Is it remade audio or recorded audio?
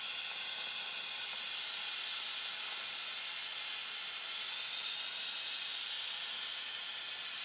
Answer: recorded